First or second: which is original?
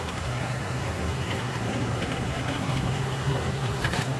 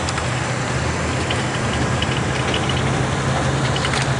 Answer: second